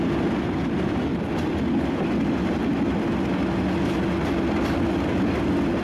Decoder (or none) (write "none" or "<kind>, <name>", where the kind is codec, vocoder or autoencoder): none